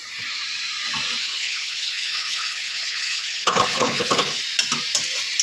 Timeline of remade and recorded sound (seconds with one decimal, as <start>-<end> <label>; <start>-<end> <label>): 0.0-1.2 recorded; 1.2-4.4 remade; 4.4-5.4 recorded